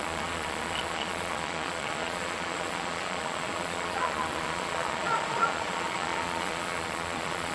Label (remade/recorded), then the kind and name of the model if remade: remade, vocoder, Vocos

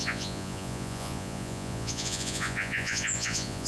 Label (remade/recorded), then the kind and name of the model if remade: remade, vocoder, Vocos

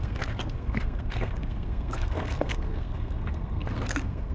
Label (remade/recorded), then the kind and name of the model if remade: remade, codec, SNAC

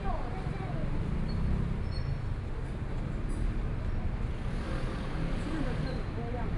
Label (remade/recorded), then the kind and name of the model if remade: recorded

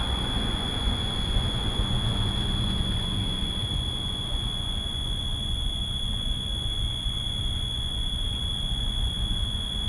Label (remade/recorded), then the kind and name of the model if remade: remade, vocoder, Vocos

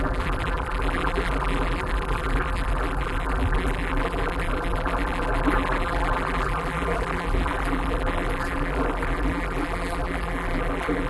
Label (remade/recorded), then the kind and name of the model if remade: remade, vocoder, BigVGAN v2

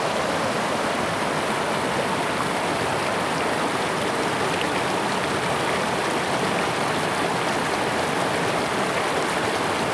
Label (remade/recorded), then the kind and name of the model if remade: recorded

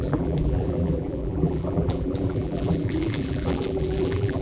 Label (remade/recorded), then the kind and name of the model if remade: remade, vocoder, BigVGAN v2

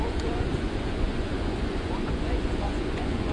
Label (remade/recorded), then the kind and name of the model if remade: remade, vocoder, Vocos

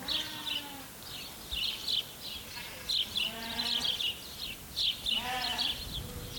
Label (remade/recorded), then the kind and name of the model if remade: recorded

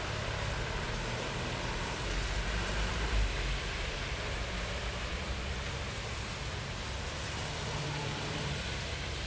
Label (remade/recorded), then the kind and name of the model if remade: remade, vocoder, BigVGAN v2